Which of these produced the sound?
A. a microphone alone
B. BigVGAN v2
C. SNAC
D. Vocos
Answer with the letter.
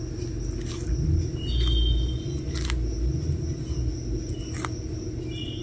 A